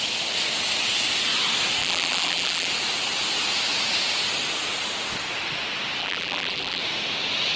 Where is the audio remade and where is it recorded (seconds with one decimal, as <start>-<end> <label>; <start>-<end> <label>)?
0.0-1.8 recorded; 1.8-2.7 remade; 2.7-6.0 recorded; 6.0-6.8 remade; 6.8-7.6 recorded